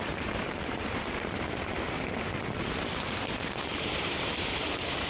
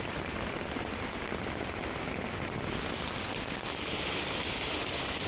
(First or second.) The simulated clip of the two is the first